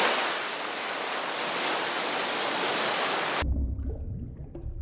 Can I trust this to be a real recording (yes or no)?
yes